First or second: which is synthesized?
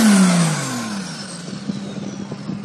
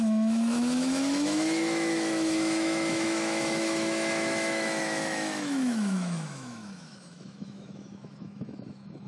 second